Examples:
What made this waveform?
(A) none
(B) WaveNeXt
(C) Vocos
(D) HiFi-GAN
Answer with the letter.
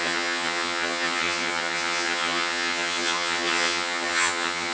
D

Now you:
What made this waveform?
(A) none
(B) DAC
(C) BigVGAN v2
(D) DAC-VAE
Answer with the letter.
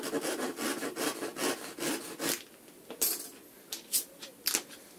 A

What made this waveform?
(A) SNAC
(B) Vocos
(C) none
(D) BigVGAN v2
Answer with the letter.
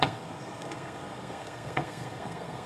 A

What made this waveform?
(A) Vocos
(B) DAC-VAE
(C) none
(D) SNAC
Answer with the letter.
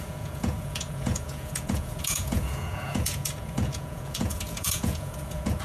A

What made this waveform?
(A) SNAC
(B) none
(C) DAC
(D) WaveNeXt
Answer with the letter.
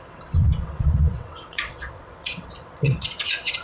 D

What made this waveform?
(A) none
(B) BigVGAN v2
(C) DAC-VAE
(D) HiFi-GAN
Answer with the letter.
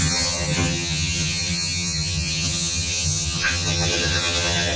D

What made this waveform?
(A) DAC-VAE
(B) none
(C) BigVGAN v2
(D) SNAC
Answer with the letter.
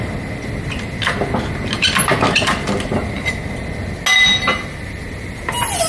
B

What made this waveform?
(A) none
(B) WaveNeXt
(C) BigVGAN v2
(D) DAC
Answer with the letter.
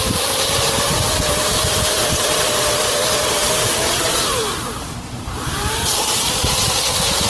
C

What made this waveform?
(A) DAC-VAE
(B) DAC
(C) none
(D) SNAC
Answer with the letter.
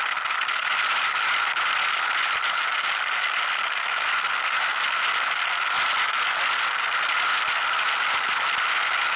C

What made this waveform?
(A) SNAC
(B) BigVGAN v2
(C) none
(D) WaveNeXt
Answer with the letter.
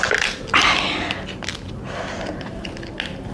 C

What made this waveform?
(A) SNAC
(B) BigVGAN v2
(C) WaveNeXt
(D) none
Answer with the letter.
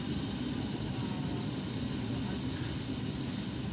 D